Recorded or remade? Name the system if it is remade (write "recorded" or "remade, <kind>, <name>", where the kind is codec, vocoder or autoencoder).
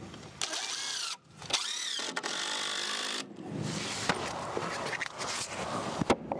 recorded